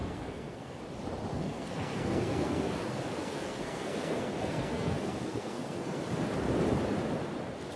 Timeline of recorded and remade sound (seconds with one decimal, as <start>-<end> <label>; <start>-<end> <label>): 0.0-0.8 remade; 0.8-1.3 recorded; 1.3-6.0 remade; 6.0-7.8 recorded